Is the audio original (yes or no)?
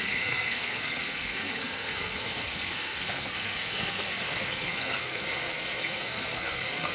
no